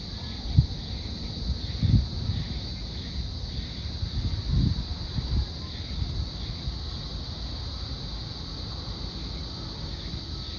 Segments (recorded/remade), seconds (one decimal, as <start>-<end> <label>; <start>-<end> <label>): 0.0-10.6 recorded